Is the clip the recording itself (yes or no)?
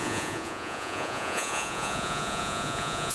no